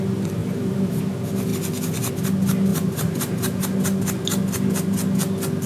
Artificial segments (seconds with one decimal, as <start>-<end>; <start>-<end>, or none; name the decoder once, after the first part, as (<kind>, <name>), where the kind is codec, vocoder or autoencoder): 0.4-1.0 (vocoder, BigVGAN v2); 2.7-3.6